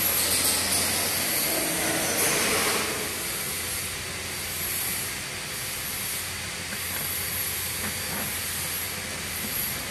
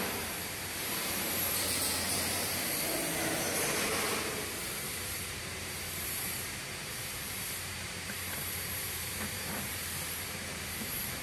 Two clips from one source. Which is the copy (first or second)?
second